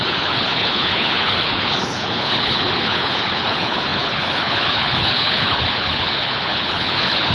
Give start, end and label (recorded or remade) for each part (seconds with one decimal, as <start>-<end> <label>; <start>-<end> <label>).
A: 0.0-7.3 remade